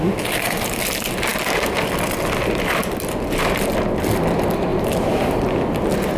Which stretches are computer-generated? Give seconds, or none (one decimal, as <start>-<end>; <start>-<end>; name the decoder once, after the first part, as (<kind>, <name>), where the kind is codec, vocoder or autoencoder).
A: 4.7-5.4 (vocoder, BigVGAN v2)

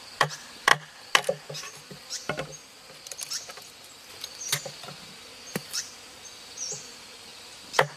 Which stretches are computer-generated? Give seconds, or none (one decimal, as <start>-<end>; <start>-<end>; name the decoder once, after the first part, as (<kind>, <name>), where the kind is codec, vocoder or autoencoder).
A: 0.0-0.7 (vocoder, BigVGAN v2); 4.1-8.0

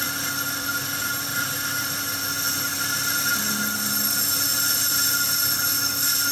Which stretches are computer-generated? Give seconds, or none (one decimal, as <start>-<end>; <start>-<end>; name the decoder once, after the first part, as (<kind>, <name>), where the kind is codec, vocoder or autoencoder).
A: none

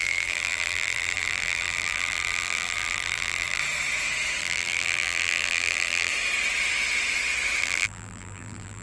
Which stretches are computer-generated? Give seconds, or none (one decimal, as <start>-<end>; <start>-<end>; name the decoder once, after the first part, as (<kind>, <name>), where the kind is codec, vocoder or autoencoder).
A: 0.0-3.6 (vocoder, BigVGAN v2); 4.4-6.1; 7.6-8.8

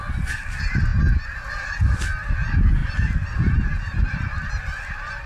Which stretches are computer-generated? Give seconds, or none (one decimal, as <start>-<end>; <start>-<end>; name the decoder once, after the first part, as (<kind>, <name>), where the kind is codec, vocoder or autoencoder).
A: 2.8-4.5 (vocoder, BigVGAN v2)

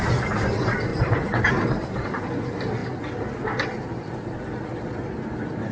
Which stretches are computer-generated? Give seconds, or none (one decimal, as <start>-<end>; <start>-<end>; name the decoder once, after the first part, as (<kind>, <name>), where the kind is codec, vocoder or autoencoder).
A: 0.9-2.3 (vocoder, BigVGAN v2)

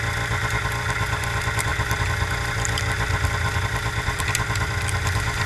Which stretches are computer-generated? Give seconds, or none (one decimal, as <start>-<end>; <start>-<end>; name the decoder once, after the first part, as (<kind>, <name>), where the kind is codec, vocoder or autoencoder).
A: none